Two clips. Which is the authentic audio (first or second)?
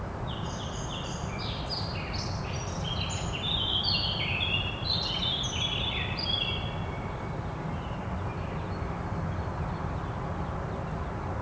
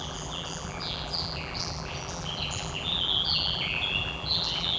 first